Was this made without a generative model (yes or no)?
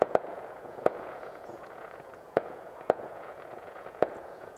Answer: no